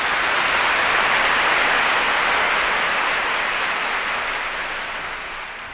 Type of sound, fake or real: real